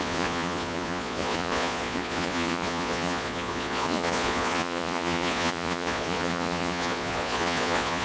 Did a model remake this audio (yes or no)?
yes